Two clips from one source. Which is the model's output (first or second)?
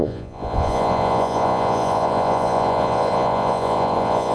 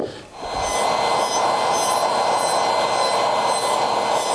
first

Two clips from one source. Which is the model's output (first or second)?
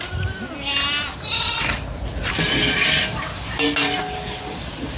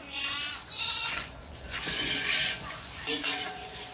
second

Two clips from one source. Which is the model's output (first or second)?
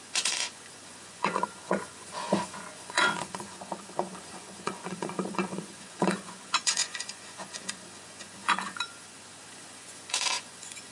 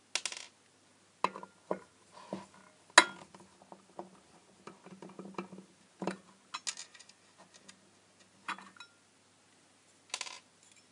first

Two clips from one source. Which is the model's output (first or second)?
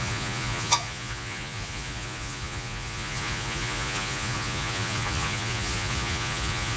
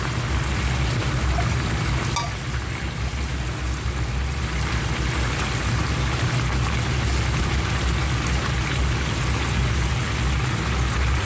first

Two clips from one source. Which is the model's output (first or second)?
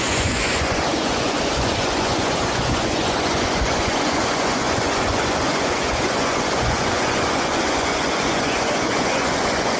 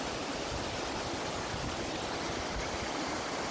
first